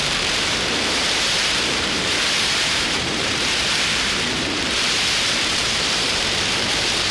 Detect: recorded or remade remade